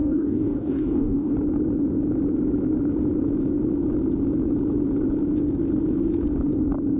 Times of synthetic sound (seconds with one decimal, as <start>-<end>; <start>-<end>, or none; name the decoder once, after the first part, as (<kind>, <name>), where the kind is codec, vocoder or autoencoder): 0.0-1.3 (codec, DAC)